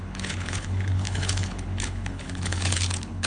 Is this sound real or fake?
fake